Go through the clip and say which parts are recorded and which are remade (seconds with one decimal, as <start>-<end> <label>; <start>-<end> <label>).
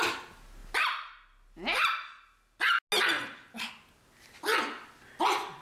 0.0-5.6 recorded